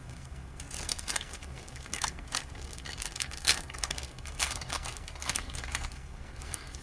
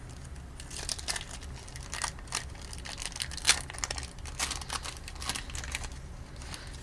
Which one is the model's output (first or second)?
first